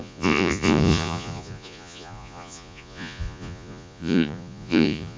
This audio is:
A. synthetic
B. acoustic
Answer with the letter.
A